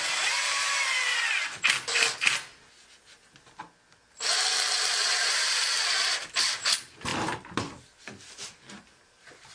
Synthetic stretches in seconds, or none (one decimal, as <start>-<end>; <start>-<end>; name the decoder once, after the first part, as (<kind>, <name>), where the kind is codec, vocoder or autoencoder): 0.0-0.6 (vocoder, BigVGAN v2); 5.1-9.5